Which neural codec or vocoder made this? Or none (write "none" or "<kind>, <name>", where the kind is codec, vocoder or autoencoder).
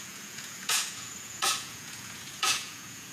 vocoder, Vocos